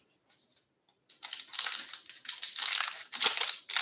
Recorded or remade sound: recorded